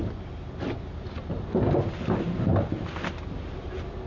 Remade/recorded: recorded